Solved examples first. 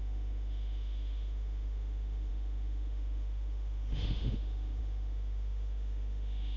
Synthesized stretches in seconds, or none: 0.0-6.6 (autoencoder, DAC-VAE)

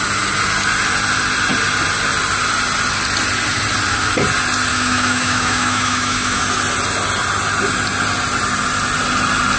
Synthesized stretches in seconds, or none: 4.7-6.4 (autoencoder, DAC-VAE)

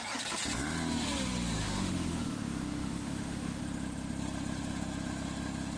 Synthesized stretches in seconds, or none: 1.6-3.6 (autoencoder, DAC-VAE)

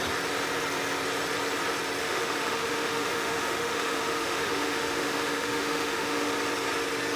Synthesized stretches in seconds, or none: 2.0-6.3 (autoencoder, DAC-VAE)

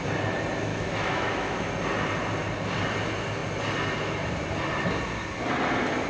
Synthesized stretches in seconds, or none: 0.7-1.7 (autoencoder, DAC-VAE)